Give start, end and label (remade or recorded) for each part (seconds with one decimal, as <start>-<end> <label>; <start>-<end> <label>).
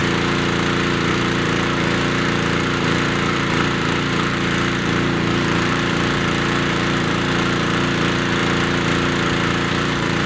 0.0-1.1 recorded; 1.1-8.4 remade; 8.4-9.7 recorded; 9.7-10.3 remade